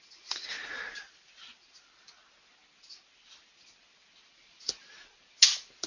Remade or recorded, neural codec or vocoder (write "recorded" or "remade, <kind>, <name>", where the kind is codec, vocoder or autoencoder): recorded